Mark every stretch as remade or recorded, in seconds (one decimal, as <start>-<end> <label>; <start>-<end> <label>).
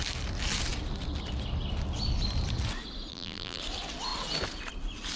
0.0-3.1 recorded; 3.1-3.6 remade; 3.6-5.2 recorded